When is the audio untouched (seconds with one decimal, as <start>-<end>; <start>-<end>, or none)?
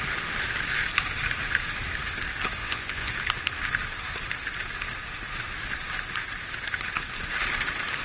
0.0-2.6; 3.1-8.0